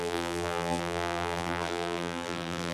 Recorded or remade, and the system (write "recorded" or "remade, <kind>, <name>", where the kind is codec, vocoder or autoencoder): remade, vocoder, BigVGAN v2